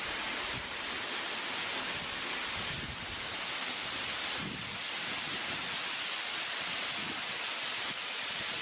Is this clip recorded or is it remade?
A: recorded